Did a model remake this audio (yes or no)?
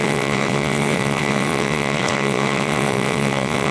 yes